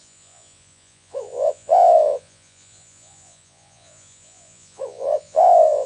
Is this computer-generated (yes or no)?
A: yes